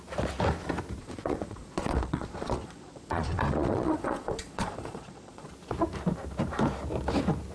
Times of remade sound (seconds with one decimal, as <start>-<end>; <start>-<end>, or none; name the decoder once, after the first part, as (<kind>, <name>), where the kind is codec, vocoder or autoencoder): 1.0-5.5 (vocoder, Vocos)